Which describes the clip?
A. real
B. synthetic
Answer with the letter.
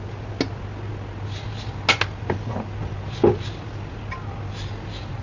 A